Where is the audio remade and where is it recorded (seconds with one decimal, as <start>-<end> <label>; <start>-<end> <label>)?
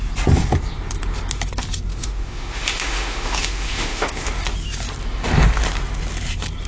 0.0-1.9 recorded; 1.9-4.3 remade; 4.3-6.7 recorded